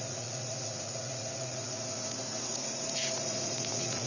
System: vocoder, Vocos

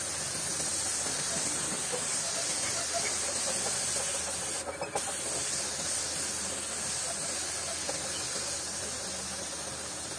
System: none